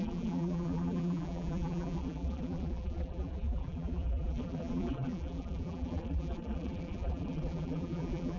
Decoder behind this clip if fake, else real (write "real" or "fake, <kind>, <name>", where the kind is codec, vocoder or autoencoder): fake, vocoder, BigVGAN v2